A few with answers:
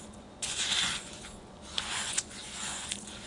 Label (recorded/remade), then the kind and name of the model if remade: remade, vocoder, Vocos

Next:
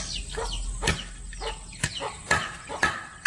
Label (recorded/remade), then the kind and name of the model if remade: recorded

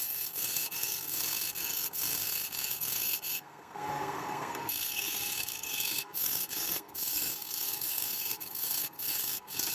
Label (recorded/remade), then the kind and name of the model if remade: remade, codec, SNAC